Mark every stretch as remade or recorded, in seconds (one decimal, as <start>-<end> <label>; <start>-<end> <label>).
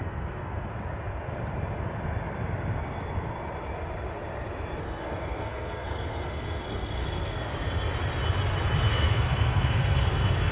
0.0-0.7 remade; 0.7-4.8 recorded; 4.8-7.5 remade; 7.5-8.9 recorded; 8.9-10.5 remade